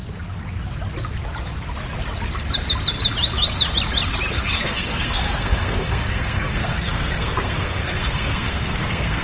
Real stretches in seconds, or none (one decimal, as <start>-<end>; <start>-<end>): 0.0-4.3

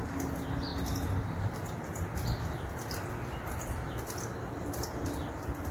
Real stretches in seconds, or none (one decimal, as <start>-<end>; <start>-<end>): 0.0-5.7